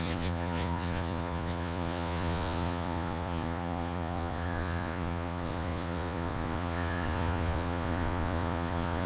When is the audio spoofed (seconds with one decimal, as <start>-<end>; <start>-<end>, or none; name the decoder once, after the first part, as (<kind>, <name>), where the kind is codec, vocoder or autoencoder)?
0.0-9.1 (vocoder, Vocos)